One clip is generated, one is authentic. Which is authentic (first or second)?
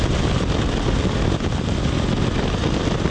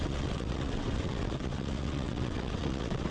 first